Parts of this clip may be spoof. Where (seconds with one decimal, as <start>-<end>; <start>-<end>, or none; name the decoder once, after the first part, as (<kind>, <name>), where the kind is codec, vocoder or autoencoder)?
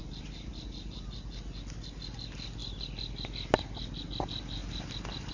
0.0-0.5 (vocoder, BigVGAN v2)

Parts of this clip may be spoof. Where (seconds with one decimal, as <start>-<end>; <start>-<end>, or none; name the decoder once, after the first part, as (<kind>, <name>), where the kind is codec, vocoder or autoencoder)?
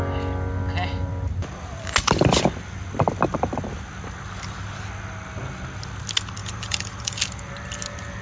6.4-7.2 (vocoder, BigVGAN v2)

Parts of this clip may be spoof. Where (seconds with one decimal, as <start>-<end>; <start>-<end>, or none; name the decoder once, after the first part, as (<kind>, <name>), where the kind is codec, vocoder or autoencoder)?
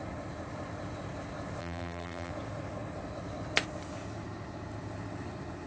1.6-2.3 (vocoder, BigVGAN v2)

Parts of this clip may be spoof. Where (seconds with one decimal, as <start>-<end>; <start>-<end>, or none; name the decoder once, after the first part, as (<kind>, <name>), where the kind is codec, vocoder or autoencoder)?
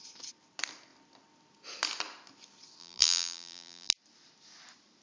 2.8-3.9 (vocoder, BigVGAN v2)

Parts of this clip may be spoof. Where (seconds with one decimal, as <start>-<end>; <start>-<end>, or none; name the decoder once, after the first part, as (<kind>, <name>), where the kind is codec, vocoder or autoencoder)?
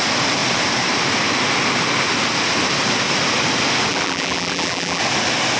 3.9-5.0 (vocoder, BigVGAN v2)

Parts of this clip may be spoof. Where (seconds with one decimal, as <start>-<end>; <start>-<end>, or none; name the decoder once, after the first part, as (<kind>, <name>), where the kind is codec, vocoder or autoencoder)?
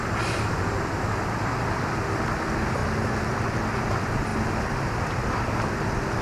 0.0-2.8 (vocoder, BigVGAN v2); 3.8-6.2